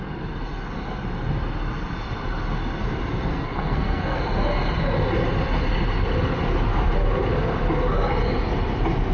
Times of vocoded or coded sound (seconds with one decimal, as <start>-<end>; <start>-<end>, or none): 3.3-4.2